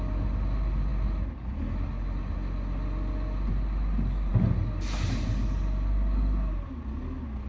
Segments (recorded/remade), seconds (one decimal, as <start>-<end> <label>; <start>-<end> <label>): 0.0-7.5 recorded